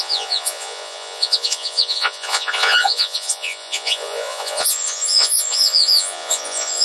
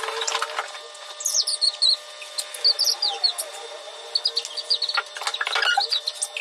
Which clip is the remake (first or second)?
first